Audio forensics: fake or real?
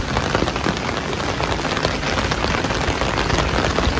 real